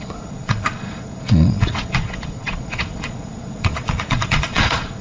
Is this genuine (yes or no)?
no